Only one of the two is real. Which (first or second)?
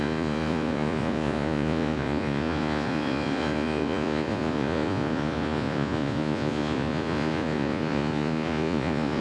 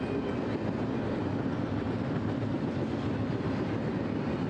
second